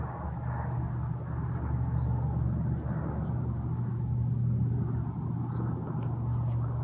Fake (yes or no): no